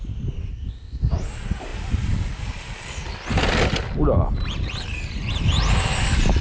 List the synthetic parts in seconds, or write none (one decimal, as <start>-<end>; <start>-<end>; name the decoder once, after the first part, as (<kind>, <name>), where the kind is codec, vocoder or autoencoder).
0.5-1.1 (codec, ZipCodec)